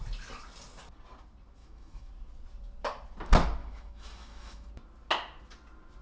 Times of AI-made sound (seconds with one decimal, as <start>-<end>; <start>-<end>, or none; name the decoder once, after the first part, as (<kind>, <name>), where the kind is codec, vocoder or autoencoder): 1.6-2.1 (autoencoder, DAC-VAE); 3.6-4.7